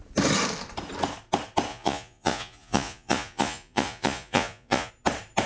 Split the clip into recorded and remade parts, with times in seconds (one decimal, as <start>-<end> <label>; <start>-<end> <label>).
0.0-1.7 recorded; 1.7-4.9 remade; 4.9-5.5 recorded